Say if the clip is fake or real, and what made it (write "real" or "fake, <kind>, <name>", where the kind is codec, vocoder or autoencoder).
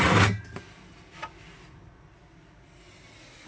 real